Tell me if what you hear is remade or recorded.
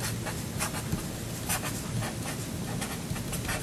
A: recorded